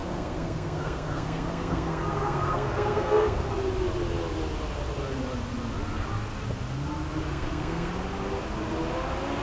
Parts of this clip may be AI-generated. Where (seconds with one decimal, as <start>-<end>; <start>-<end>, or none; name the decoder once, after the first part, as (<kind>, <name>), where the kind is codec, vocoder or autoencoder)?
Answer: 0.0-3.5 (codec, SNAC); 7.3-7.9

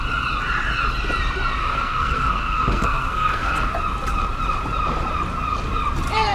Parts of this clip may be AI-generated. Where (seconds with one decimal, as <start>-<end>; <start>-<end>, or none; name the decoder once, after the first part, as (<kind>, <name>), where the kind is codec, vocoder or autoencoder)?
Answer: 1.6-3.7 (codec, SNAC)

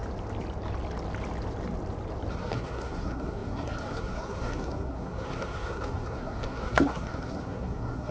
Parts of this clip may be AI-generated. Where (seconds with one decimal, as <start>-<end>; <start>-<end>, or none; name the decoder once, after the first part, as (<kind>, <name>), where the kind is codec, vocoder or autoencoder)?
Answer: 2.3-8.1 (codec, SNAC)

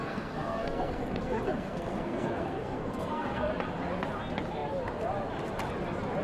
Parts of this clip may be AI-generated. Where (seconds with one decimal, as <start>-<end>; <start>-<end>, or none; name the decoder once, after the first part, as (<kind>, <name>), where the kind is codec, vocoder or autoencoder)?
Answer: 0.0-3.5 (codec, SNAC)

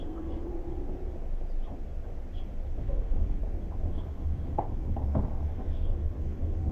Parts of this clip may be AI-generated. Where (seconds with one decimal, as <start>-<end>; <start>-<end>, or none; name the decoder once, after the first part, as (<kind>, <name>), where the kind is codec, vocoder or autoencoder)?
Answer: 0.0-0.5 (codec, SNAC); 2.8-3.4; 3.9-6.7